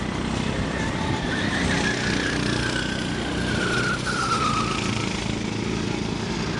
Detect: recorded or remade recorded